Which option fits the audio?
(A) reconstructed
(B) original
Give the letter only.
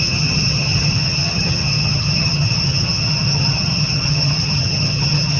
A